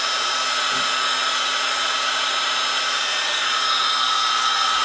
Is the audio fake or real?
real